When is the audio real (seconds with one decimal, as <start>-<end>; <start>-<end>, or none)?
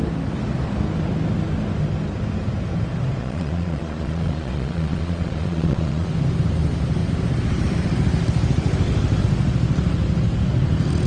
0.0-3.2; 6.1-11.1